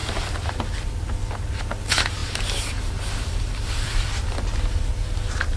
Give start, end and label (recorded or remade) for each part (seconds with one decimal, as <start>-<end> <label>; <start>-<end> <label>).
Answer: 0.0-2.2 recorded; 2.2-4.1 remade; 4.1-5.6 recorded